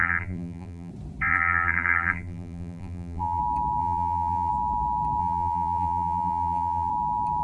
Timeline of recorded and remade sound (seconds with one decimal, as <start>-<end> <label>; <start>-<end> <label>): 0.0-0.9 remade; 0.9-1.3 recorded; 1.3-3.4 remade; 3.4-3.8 recorded; 3.8-4.5 remade; 4.5-5.2 recorded; 5.2-6.9 remade; 6.9-7.4 recorded